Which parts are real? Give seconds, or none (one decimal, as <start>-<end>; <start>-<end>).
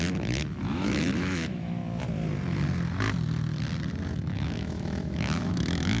1.8-4.1